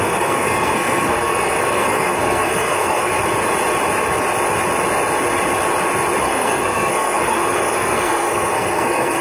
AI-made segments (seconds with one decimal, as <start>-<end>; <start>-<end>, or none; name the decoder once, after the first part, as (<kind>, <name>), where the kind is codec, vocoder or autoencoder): 0.0-3.1 (codec, SNAC); 6.2-9.2